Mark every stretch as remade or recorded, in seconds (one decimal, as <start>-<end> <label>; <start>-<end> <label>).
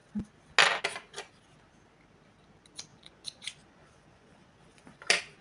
0.0-2.9 recorded; 2.9-5.0 remade; 5.0-5.4 recorded